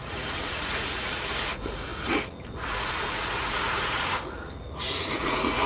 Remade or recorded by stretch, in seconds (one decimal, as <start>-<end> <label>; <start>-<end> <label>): 0.0-5.7 remade

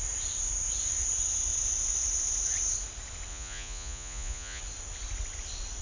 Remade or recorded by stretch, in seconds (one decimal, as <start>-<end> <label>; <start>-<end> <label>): 0.0-3.3 recorded; 3.3-4.6 remade; 4.6-5.8 recorded

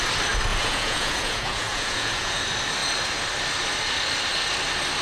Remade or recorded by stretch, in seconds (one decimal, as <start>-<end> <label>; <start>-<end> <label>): 0.0-0.5 recorded; 0.5-2.4 remade; 2.4-5.0 recorded

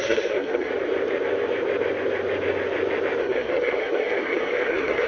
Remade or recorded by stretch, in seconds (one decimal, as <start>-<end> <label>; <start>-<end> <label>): 0.0-0.7 remade; 0.7-3.2 recorded; 3.2-5.1 remade

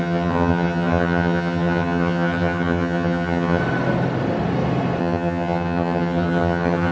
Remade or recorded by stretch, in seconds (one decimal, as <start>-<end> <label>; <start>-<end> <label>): 0.0-3.6 remade; 3.6-5.0 recorded; 5.0-6.9 remade

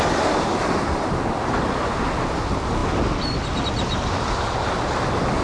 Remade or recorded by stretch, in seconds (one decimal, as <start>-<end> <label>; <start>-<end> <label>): 0.0-0.5 recorded; 0.5-1.1 remade; 1.1-5.4 recorded

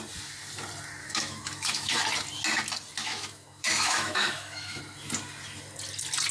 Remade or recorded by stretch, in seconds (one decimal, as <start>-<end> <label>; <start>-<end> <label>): 0.0-1.0 recorded; 1.0-2.0 remade; 2.0-3.0 recorded; 3.0-4.8 remade; 4.8-6.3 recorded